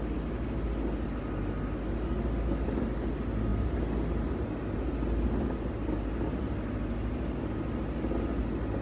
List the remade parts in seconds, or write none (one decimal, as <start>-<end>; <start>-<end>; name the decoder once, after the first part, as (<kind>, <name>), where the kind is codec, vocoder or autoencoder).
none